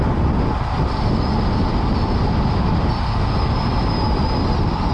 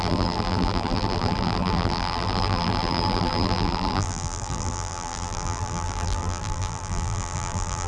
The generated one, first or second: second